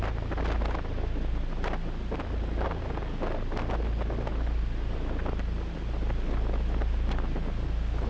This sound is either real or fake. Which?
real